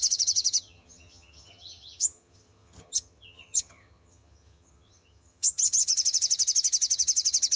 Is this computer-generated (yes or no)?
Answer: yes